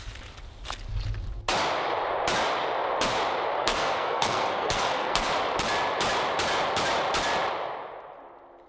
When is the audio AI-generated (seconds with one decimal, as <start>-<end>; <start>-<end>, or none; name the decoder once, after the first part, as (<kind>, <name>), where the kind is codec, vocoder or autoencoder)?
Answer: 3.6-5.3 (codec, SNAC)

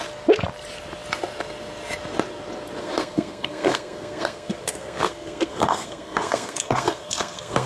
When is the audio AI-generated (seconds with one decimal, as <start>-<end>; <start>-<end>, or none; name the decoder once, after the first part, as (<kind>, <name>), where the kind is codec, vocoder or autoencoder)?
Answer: 2.8-7.7 (codec, SNAC)

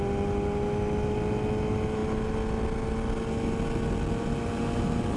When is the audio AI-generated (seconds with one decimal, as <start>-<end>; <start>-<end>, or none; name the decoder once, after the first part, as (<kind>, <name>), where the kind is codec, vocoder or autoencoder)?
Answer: none

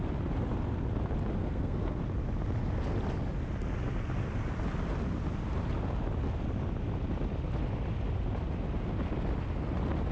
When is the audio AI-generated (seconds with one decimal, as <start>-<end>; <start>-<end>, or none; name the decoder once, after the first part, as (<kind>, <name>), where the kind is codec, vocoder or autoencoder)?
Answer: 1.4-2.0 (codec, SNAC)

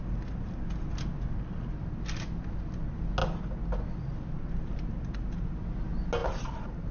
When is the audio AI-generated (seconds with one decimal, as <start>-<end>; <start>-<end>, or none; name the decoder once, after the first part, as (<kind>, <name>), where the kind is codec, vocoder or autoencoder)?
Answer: none

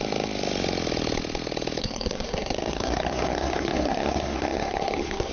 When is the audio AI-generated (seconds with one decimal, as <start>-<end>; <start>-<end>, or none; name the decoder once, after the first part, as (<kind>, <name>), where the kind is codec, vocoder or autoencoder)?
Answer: 1.8-5.3 (codec, SNAC)

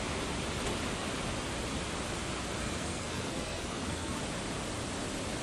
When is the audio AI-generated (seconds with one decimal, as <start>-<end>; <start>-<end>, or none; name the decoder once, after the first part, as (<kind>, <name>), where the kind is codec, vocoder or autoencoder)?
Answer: 2.6-4.2 (codec, SNAC)

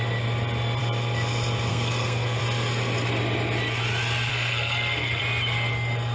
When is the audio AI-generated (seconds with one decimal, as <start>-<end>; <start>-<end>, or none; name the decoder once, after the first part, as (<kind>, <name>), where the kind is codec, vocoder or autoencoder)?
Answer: 1.7-2.4 (codec, SNAC); 4.3-5.2